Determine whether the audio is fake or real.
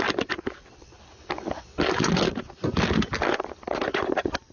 real